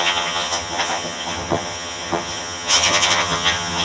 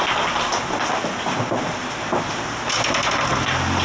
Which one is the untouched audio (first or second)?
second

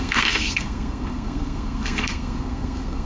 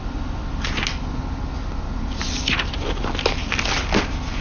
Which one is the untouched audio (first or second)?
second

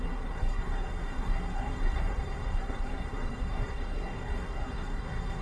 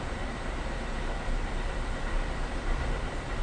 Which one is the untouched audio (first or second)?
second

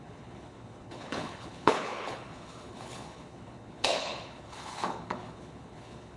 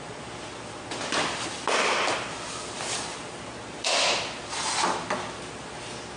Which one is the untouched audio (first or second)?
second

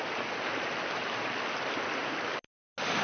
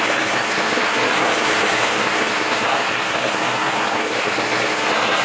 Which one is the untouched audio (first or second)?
first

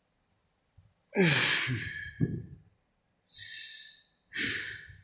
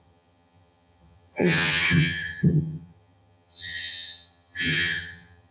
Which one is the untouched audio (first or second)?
first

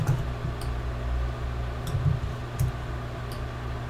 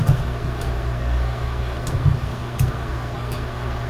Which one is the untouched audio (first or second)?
first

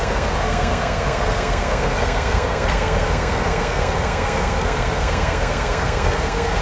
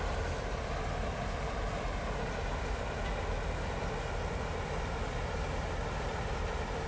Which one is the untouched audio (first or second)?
second